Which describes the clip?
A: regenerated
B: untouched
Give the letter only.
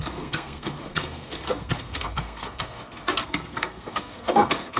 A